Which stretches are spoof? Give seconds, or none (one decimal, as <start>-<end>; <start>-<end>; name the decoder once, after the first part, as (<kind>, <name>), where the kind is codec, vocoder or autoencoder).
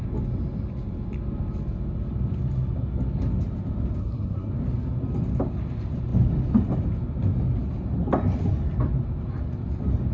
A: 4.0-4.5 (codec, SNAC)